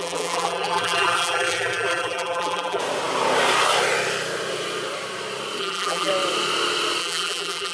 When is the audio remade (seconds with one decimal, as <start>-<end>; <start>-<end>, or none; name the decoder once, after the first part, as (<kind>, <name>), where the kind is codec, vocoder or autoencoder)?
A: 0.0-2.8 (vocoder, BigVGAN v2); 5.6-6.1; 7.0-7.7